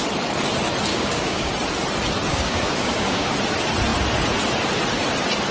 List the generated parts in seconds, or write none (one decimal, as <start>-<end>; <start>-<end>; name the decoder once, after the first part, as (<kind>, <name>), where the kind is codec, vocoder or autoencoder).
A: 0.9-1.5 (codec, DAC); 2.3-3.3